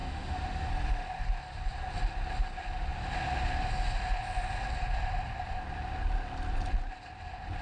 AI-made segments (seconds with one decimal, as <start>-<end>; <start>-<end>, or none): 0.0-0.7